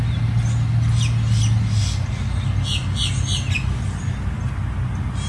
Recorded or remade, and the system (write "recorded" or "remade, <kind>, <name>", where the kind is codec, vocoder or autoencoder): recorded